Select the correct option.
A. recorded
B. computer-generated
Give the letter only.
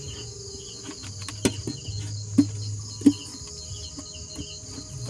A